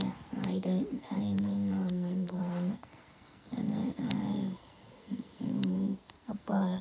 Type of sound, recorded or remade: remade